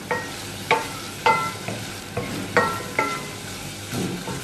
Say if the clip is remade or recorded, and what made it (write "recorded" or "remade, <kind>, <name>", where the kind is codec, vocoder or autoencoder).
remade, vocoder, BigVGAN v2